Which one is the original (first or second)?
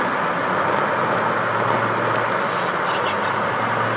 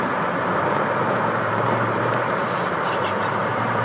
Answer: first